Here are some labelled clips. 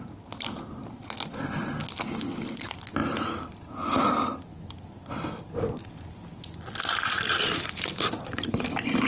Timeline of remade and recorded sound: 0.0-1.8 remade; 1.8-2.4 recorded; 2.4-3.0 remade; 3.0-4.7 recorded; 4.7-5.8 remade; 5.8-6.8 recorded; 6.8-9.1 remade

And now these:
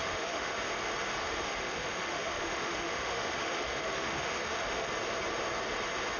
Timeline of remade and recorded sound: 0.0-0.5 remade; 0.5-1.2 recorded; 1.2-4.9 remade; 4.9-6.2 recorded

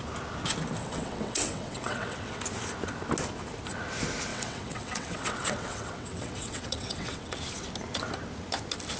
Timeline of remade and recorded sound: 0.0-0.8 recorded; 0.8-2.4 remade; 2.4-4.3 recorded; 4.3-7.4 remade; 7.4-9.0 recorded

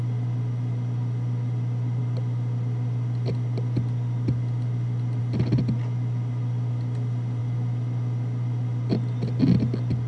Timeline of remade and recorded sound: 0.0-10.1 recorded

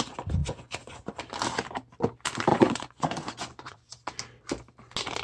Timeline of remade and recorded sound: 0.0-0.4 recorded; 0.4-1.2 remade; 1.2-2.5 recorded; 2.5-3.9 remade; 3.9-5.2 recorded

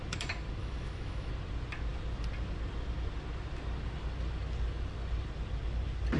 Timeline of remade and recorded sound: 0.0-0.6 recorded; 0.6-1.3 remade; 1.3-6.2 recorded

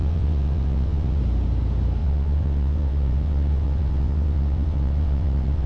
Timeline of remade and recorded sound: 0.0-1.2 remade; 1.2-2.0 recorded; 2.0-5.7 remade

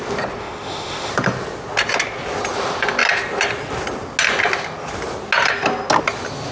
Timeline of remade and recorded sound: 0.0-0.4 recorded; 0.4-1.1 remade; 1.1-6.5 recorded